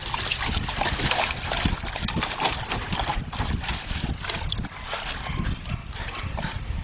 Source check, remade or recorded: recorded